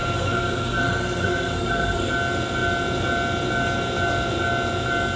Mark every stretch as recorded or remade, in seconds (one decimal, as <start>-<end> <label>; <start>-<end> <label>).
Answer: 0.0-2.1 remade; 2.1-5.2 recorded